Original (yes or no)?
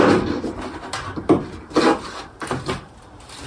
yes